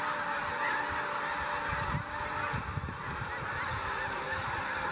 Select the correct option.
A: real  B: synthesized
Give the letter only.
A